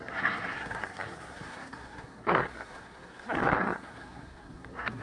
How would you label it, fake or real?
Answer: fake